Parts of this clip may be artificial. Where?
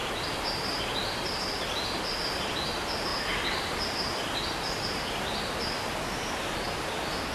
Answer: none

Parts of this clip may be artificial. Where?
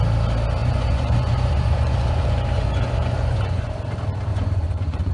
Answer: 0.6-3.7 (vocoder, Vocos); 4.3-5.1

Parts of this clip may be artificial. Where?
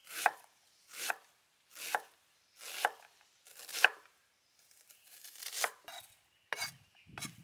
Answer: 0.0-1.1 (vocoder, BigVGAN v2); 3.7-5.8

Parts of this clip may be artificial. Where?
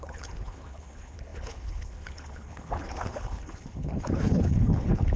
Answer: 0.0-5.2 (codec, HILCodec)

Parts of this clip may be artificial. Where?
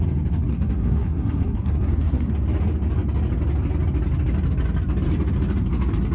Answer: 0.5-2.3 (codec, SNAC)